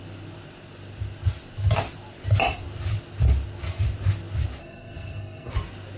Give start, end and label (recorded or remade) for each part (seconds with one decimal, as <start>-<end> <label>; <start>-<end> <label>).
0.0-4.6 recorded; 4.6-5.5 remade; 5.5-6.0 recorded

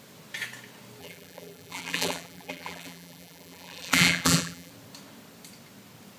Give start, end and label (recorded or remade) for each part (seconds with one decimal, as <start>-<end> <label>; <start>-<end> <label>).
0.0-1.0 recorded; 1.0-4.7 remade; 4.7-6.2 recorded

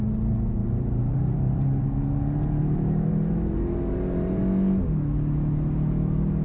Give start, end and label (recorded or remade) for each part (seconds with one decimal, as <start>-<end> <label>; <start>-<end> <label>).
0.0-0.6 recorded; 0.6-4.4 remade; 4.4-6.4 recorded